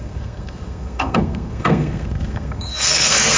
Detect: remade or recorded remade